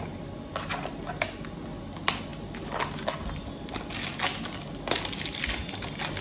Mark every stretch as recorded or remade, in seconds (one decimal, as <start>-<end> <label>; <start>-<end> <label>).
0.0-6.2 recorded